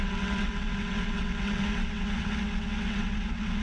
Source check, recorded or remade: remade